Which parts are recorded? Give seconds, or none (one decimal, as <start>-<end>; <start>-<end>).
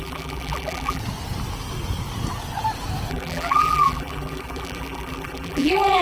1.0-3.1